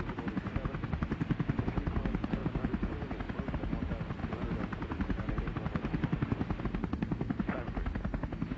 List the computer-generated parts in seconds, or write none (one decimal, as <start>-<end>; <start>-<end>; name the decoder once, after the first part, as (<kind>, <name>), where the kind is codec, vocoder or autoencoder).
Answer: none